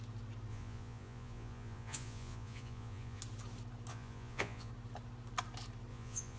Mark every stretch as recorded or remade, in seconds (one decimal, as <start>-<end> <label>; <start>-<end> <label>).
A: 0.0-0.5 recorded; 0.5-3.2 remade; 3.2-3.9 recorded; 3.9-4.7 remade; 4.7-5.9 recorded; 5.9-6.4 remade